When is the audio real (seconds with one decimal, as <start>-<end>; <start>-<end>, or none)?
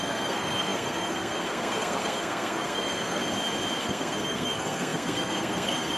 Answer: 3.2-3.8